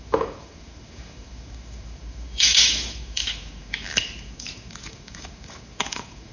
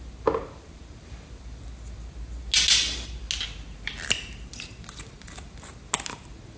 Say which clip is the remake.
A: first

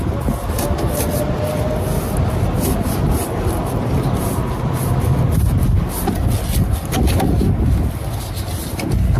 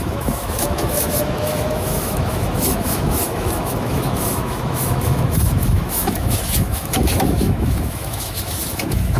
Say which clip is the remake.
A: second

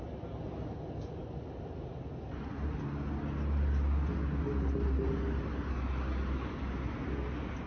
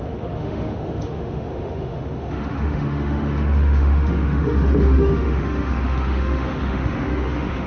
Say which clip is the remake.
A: second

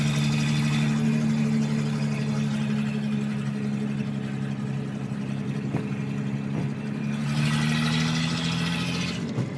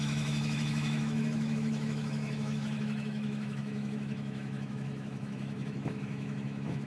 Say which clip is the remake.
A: second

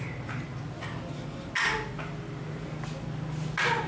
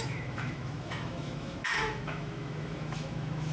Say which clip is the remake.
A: second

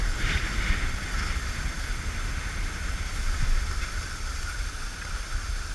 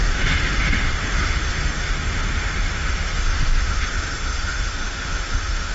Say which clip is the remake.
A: second